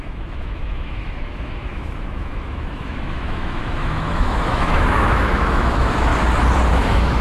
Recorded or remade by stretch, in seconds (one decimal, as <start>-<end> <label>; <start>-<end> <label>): 0.0-6.1 remade; 6.1-6.7 recorded; 6.7-7.2 remade